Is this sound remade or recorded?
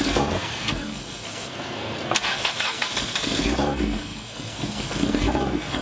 remade